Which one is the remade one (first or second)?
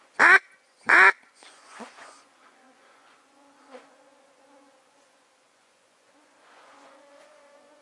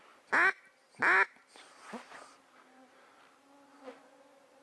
first